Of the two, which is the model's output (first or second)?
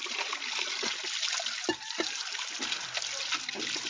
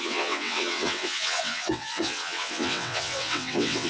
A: second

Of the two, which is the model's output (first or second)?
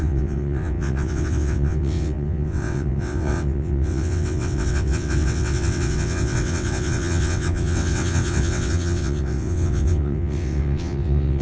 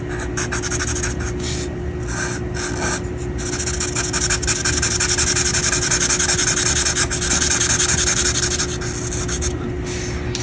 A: first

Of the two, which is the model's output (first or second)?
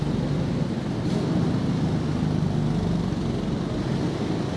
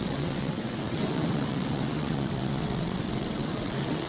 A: second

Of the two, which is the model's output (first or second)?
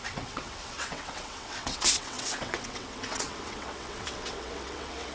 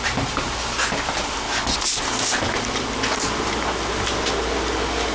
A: first